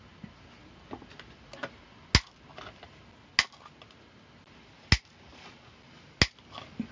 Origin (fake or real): real